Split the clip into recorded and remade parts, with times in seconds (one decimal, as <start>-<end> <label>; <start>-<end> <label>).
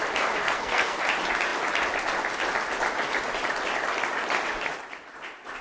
0.0-0.4 recorded; 0.4-1.0 remade; 1.0-5.6 recorded